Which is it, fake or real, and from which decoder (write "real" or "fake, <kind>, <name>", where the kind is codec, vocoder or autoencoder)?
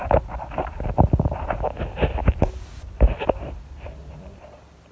real